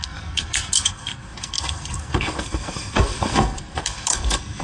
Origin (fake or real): fake